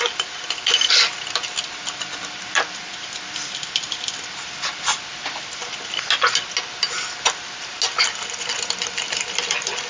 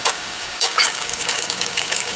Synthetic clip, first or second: second